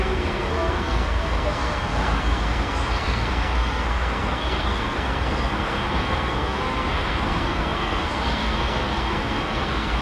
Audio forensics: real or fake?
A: fake